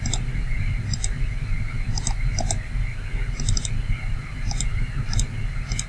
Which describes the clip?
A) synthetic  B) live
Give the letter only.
B